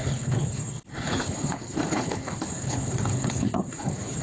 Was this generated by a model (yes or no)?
yes